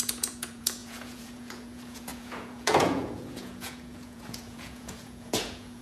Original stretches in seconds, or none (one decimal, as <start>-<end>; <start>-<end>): none